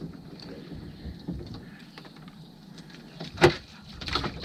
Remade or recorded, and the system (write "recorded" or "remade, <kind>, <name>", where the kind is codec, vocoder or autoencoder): remade, vocoder, BigVGAN v2